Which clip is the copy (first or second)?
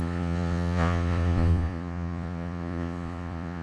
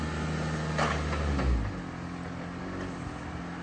first